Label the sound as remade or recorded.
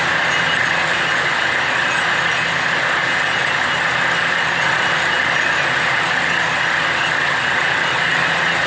recorded